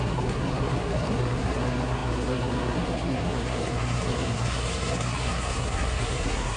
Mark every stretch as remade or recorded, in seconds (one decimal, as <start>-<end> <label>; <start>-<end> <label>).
0.0-6.6 remade